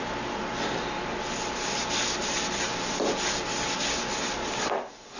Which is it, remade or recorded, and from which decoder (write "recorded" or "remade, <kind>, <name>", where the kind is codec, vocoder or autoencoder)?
recorded